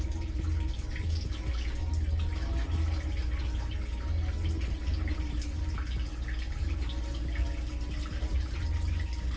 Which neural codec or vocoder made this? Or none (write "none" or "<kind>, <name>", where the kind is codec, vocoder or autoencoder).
none